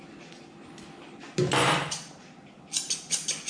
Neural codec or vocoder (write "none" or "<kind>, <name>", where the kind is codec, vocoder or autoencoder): none